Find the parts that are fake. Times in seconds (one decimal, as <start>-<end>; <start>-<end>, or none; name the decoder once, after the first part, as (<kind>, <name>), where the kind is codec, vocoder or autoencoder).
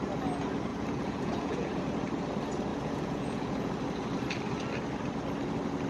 0.7-1.8 (vocoder, Vocos); 2.7-3.7